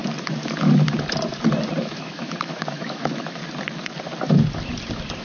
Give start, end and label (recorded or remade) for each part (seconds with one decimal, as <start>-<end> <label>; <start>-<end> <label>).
0.0-1.8 recorded; 1.8-3.4 remade; 3.4-5.2 recorded